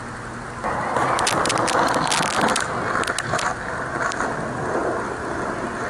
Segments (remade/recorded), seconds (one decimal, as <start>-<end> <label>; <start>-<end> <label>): 0.0-4.8 recorded; 4.8-5.9 remade

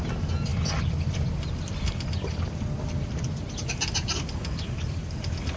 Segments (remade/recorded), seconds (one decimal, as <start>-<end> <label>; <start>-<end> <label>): 0.0-5.6 recorded